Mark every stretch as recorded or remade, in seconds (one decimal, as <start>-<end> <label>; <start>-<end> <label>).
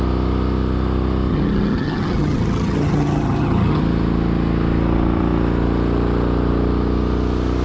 0.0-1.3 recorded; 1.3-3.8 remade; 3.8-7.6 recorded